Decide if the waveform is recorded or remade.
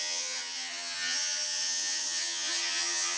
remade